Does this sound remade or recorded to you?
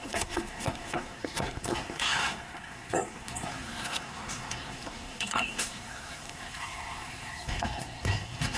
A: remade